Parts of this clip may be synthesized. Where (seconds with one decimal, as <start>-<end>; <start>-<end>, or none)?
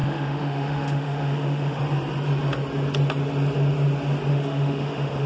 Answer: 0.0-1.8; 4.3-5.3